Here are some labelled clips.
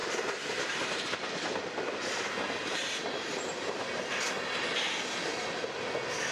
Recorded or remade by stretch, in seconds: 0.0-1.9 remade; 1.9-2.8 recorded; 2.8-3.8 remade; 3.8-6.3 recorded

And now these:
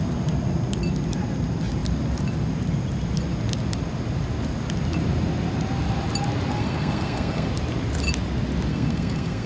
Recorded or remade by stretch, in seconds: 0.0-6.5 recorded; 6.5-7.5 remade; 7.5-8.7 recorded; 8.7-9.5 remade

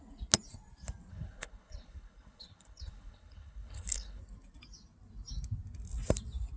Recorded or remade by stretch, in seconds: 0.0-1.1 recorded; 1.1-4.2 remade; 4.2-6.6 recorded

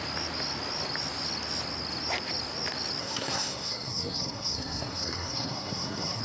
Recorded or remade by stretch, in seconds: 0.0-3.0 recorded; 3.0-6.2 remade

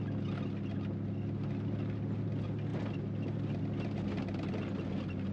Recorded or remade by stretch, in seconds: 0.0-5.3 recorded

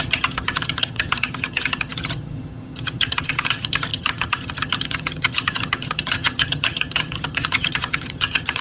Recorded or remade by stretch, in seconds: 0.0-8.6 remade

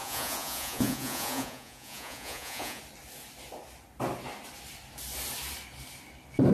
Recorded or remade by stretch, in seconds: 0.0-2.8 remade; 2.8-6.5 recorded

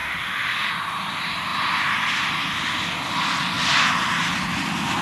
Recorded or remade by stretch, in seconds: 0.0-0.7 remade; 0.7-5.0 recorded